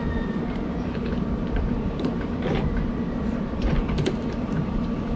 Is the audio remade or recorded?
remade